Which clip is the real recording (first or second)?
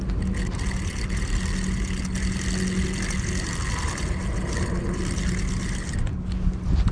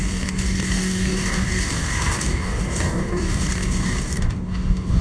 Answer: first